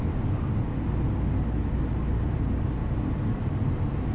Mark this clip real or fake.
real